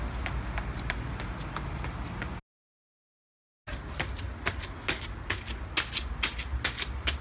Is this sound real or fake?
real